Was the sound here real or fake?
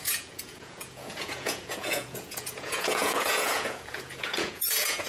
fake